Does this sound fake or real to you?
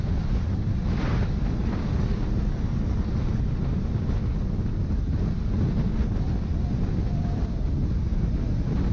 real